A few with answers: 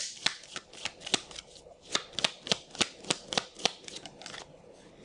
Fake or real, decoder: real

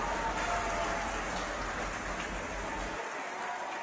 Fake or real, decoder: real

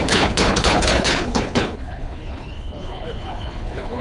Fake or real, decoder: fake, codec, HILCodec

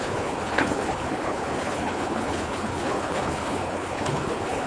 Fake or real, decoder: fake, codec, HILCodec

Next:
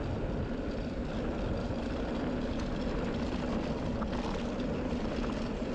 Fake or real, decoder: real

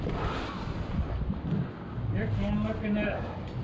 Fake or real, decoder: real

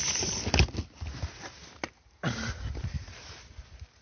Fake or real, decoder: real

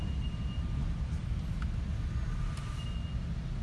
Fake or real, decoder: real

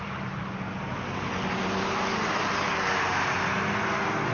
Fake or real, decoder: real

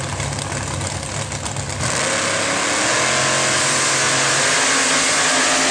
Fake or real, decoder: real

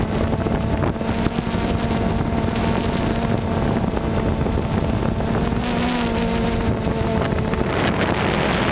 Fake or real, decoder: real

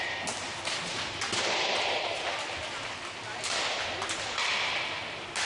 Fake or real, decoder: real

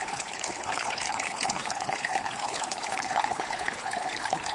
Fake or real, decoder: fake, codec, HILCodec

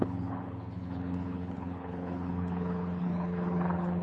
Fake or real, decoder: fake, codec, HILCodec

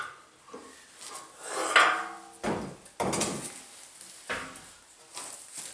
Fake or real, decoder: real